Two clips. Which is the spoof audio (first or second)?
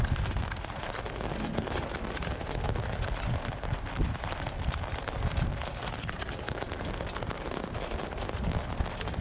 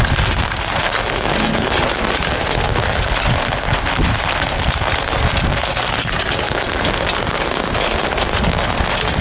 first